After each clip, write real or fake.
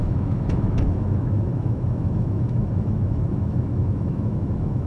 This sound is fake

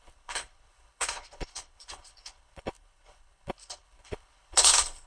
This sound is fake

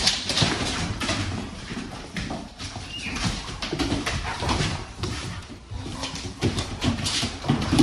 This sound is fake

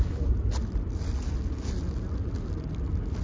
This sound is real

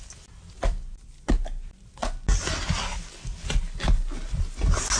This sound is real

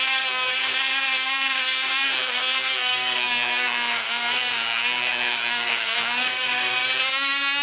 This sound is fake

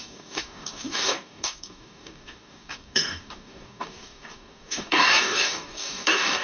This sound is fake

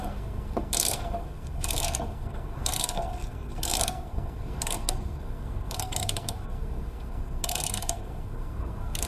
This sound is fake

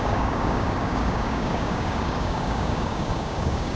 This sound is fake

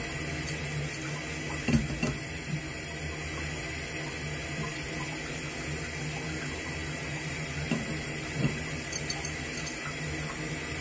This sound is real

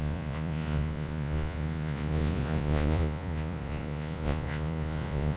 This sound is fake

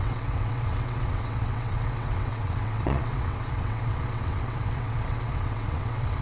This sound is fake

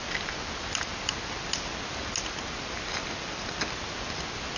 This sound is real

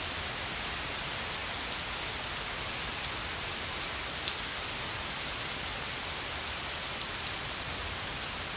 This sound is real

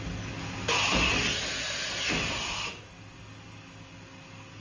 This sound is real